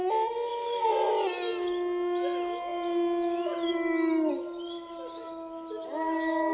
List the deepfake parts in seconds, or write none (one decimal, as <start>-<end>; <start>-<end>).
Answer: 0.5-1.1; 2.7-4.3

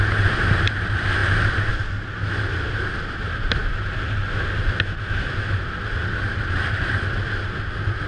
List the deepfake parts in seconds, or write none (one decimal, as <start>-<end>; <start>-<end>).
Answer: none

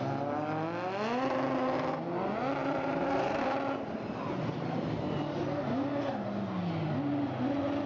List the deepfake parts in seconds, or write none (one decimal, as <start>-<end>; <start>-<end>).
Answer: 2.6-3.4

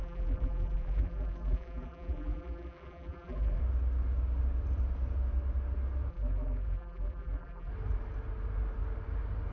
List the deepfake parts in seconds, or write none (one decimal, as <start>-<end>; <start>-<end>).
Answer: 0.0-3.6; 6.1-7.7

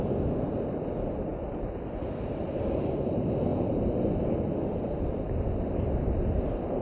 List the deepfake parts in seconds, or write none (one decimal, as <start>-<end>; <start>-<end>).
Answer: 3.5-6.8

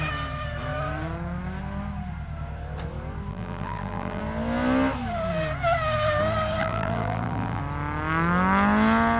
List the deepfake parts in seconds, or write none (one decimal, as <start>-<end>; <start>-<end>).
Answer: 3.3-4.2; 6.6-7.6